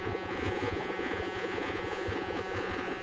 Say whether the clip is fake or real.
fake